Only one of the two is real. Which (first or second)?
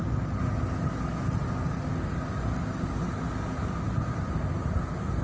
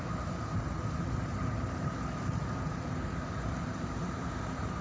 first